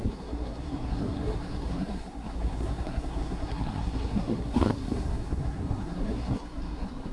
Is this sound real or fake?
fake